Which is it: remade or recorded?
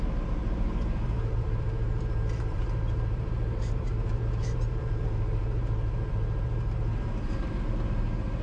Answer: remade